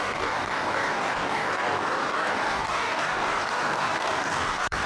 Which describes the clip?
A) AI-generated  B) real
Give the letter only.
A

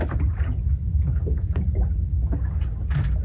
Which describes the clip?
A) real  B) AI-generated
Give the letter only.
A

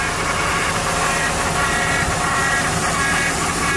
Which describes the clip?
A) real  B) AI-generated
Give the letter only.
A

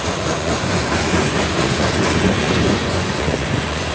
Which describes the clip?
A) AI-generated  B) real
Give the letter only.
A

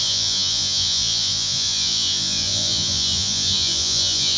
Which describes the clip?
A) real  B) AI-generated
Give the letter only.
B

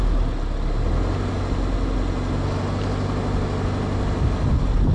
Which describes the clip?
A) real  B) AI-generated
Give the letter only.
A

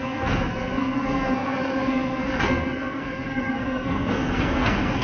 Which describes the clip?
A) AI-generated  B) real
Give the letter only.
A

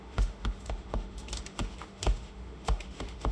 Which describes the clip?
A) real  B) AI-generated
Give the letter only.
B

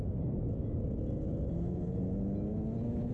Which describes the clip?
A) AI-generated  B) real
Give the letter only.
B